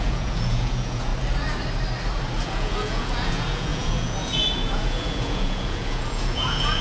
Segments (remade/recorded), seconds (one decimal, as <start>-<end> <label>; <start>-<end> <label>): 0.0-1.1 remade; 1.1-2.4 recorded; 2.4-6.8 remade